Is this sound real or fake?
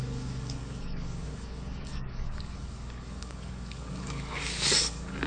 fake